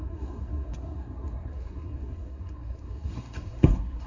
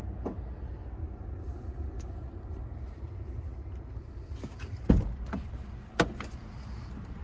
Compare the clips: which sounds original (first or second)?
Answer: second